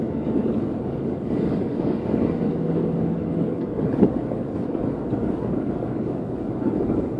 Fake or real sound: fake